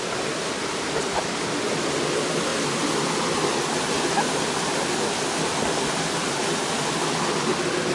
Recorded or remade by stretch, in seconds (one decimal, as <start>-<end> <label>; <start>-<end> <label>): 0.0-7.9 recorded